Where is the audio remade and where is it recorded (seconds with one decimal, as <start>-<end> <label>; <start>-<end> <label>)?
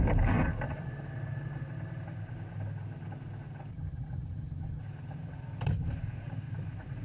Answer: 0.0-3.7 recorded; 3.7-4.8 remade; 4.8-7.0 recorded